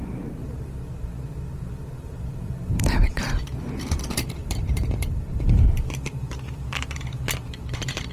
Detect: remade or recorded remade